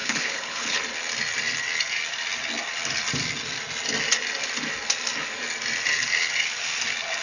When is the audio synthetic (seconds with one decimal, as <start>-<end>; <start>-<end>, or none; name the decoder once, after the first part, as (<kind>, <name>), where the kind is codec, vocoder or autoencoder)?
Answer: 0.0-0.8 (codec, HILCodec)